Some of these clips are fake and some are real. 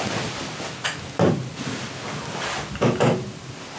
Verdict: real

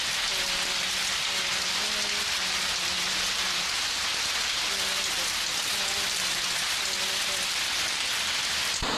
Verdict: real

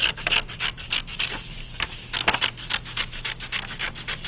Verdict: real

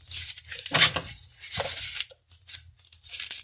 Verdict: real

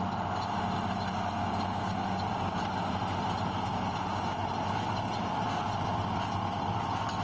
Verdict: real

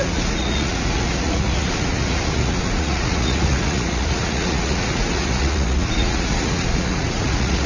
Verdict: fake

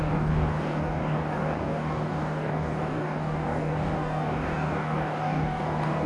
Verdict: fake